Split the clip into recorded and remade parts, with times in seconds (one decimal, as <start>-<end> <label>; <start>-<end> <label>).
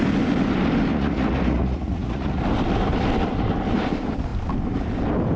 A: 0.0-0.9 recorded; 0.9-2.4 remade; 2.4-5.4 recorded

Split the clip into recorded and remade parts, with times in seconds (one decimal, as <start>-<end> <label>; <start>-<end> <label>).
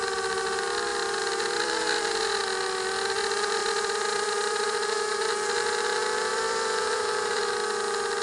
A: 0.0-0.9 recorded; 0.9-2.2 remade; 2.2-3.6 recorded; 3.6-5.3 remade; 5.3-6.3 recorded; 6.3-7.4 remade; 7.4-8.2 recorded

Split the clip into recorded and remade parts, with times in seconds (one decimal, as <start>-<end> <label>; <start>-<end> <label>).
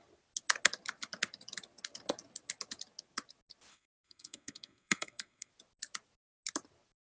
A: 0.0-3.7 recorded; 3.7-5.5 remade; 5.5-7.2 recorded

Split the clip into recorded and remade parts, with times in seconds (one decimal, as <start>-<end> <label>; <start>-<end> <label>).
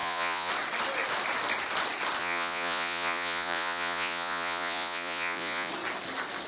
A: 0.0-0.5 remade; 0.5-2.2 recorded; 2.2-5.7 remade; 5.7-6.5 recorded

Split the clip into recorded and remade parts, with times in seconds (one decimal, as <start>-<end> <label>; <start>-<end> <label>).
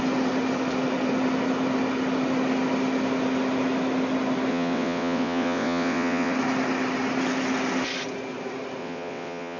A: 0.0-4.5 recorded; 4.5-6.3 remade; 6.3-8.8 recorded; 8.8-9.6 remade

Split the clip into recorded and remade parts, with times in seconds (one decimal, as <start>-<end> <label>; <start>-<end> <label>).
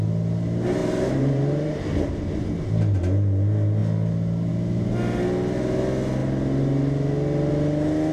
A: 0.0-0.8 recorded; 0.8-2.7 remade; 2.7-8.1 recorded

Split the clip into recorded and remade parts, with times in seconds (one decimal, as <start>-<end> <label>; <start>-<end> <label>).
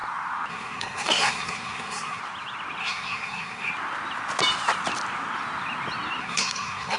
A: 0.0-0.5 recorded; 0.5-2.2 remade; 2.2-2.8 recorded; 2.8-3.7 remade; 3.7-6.2 recorded; 6.2-7.0 remade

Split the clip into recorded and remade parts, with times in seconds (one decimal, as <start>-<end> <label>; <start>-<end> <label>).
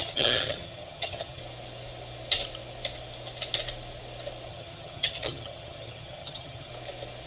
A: 0.0-1.4 remade; 1.4-4.5 recorded; 4.5-6.7 remade; 6.7-7.3 recorded